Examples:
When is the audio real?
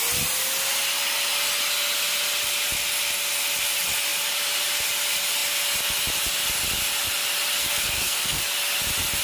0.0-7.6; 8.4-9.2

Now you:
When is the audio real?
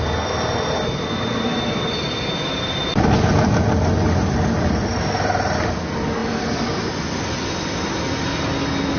0.0-9.0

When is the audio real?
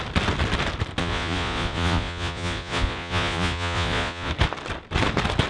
0.0-1.0; 4.3-5.5